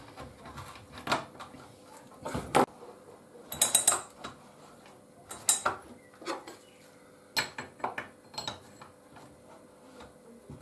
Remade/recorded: recorded